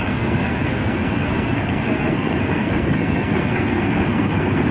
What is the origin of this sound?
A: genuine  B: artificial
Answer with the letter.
B